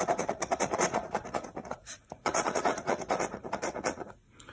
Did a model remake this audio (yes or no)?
yes